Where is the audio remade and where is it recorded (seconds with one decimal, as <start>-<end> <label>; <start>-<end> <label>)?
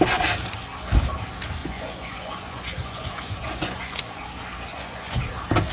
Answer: 0.0-1.6 recorded; 1.6-4.2 remade; 4.2-4.7 recorded; 4.7-5.2 remade; 5.2-5.7 recorded